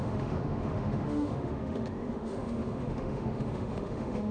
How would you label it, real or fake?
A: fake